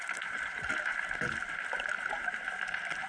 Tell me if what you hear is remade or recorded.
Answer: remade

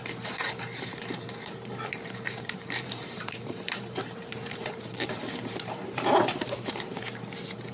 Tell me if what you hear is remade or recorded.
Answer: remade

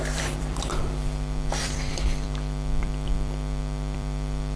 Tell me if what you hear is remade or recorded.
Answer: remade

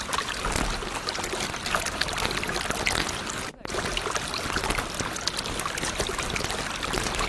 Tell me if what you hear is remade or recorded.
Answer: recorded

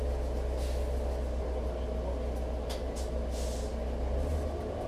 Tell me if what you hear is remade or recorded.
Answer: recorded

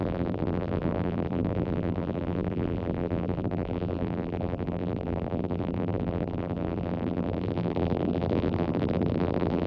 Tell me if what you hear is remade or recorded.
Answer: remade